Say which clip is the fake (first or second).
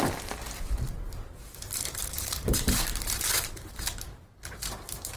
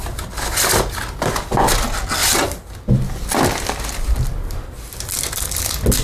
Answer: first